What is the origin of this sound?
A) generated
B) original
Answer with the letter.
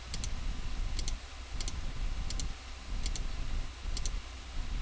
B